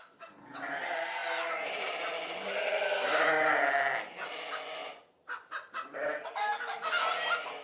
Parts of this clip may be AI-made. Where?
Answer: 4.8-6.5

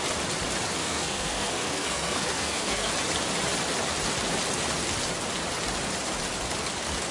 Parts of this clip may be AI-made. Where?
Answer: 0.8-2.9

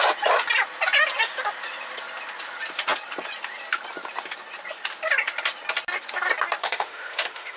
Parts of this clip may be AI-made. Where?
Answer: 6.6-7.6

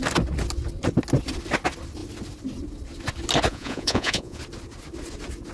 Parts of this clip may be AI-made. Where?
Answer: 3.5-4.4

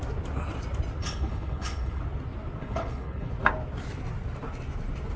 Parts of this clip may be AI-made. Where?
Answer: 1.0-2.0; 2.6-3.3

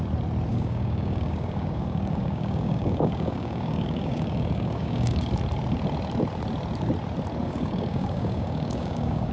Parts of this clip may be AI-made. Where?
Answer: 0.5-5.3; 7.4-9.3